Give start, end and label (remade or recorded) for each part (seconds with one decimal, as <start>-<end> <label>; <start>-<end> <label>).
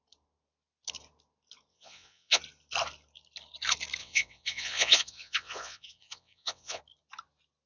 0.0-1.7 recorded; 1.7-2.4 remade; 2.4-4.0 recorded; 4.0-6.8 remade; 6.8-7.7 recorded